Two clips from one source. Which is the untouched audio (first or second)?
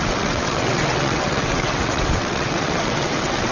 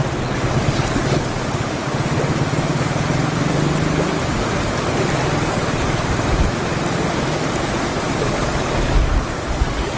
second